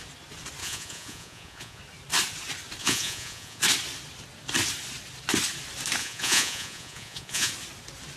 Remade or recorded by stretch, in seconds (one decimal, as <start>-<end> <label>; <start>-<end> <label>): 0.0-0.6 recorded; 0.6-1.8 remade; 1.8-2.8 recorded; 2.8-3.6 remade; 3.6-6.0 recorded; 6.0-7.5 remade; 7.5-8.2 recorded